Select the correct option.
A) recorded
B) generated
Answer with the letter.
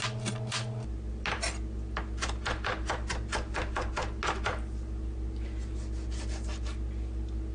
A